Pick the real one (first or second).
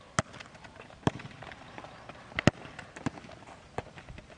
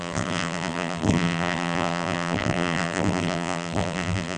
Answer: first